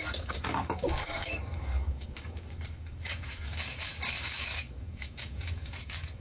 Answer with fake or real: fake